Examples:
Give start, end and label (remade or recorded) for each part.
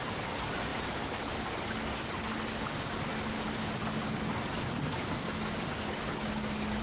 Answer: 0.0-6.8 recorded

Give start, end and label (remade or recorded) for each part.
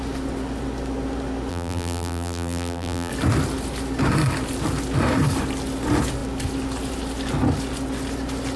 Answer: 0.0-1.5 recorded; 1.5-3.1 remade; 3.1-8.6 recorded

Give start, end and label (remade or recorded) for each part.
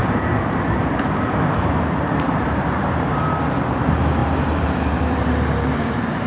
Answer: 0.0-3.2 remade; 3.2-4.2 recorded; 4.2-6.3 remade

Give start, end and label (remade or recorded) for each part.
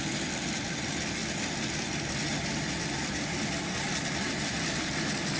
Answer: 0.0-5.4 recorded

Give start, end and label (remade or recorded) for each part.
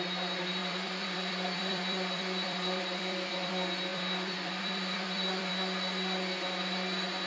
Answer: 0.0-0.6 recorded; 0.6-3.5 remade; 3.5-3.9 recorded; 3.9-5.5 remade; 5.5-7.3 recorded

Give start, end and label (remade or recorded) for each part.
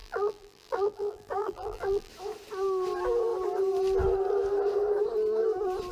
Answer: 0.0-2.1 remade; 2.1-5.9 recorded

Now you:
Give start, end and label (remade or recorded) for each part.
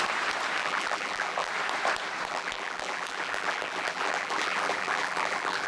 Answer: 0.0-0.6 recorded; 0.6-1.5 remade; 1.5-2.3 recorded; 2.3-5.7 remade